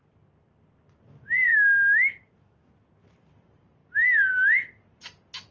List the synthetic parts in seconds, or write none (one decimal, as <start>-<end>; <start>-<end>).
1.5-2.7